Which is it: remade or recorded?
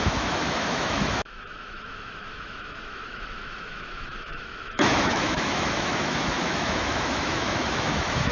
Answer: remade